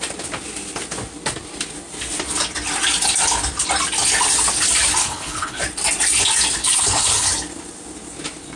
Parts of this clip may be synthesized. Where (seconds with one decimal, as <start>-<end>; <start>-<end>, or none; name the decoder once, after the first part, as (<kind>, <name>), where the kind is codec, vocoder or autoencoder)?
5.0-5.6 (codec, HILCodec); 6.6-7.3